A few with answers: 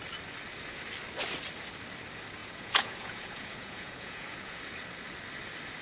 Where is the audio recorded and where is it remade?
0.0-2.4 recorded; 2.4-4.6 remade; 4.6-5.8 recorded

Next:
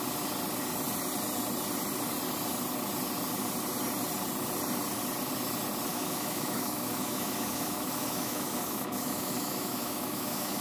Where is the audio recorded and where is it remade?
0.0-5.9 recorded; 5.9-10.6 remade